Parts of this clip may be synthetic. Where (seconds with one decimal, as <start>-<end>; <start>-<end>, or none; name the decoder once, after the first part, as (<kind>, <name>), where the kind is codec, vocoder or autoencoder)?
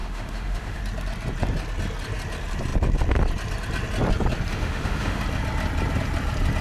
0.0-0.8 (autoencoder, DAC-VAE); 4.5-5.2